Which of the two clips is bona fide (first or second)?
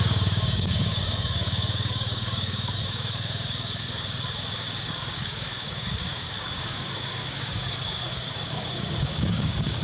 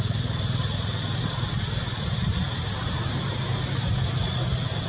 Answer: second